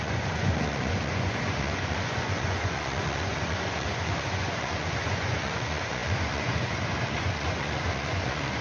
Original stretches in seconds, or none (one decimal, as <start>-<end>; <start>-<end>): none